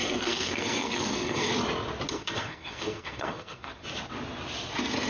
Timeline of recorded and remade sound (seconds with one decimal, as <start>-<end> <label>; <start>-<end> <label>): 0.0-1.5 remade; 1.5-2.1 recorded; 2.1-3.7 remade; 3.7-5.1 recorded